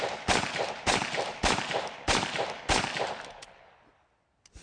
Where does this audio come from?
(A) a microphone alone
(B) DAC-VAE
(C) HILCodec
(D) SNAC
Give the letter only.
A